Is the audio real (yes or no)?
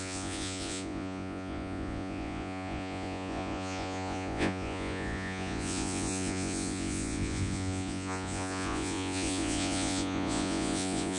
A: no